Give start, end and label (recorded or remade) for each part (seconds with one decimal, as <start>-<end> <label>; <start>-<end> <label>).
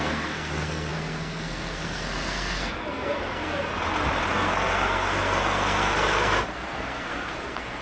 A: 0.0-3.7 remade; 3.7-4.3 recorded; 4.3-7.8 remade